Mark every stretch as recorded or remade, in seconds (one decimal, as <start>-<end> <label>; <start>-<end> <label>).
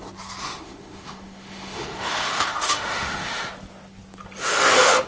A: 0.0-0.4 recorded; 0.4-3.5 remade; 3.5-4.4 recorded; 4.4-5.1 remade